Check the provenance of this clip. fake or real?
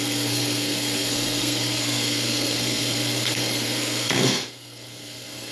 fake